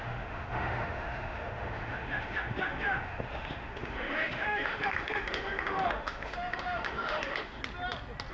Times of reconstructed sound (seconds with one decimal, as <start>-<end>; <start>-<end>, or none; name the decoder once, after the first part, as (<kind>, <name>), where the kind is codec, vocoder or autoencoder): 0.0-7.6 (autoencoder, DAC-VAE)